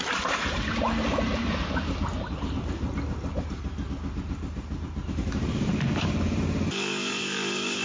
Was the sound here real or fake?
fake